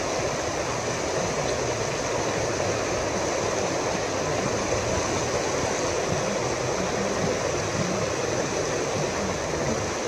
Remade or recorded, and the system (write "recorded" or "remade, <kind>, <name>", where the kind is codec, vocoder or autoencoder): recorded